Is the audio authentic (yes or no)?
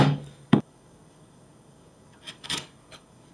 no